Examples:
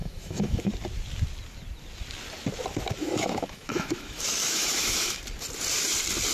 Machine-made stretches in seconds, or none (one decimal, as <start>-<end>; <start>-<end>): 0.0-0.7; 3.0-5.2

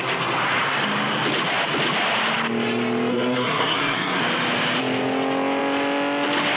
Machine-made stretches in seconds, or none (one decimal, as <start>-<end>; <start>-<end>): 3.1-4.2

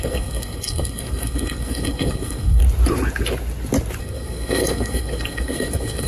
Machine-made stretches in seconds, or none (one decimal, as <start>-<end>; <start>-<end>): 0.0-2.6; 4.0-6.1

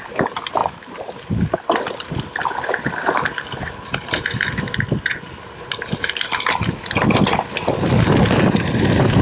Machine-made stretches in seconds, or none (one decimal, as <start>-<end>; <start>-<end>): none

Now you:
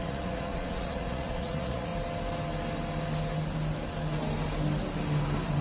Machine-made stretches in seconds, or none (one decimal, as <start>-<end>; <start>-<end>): 0.0-1.9

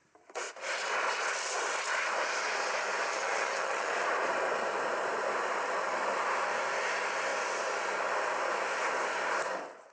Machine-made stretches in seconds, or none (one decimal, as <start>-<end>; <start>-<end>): 3.1-3.9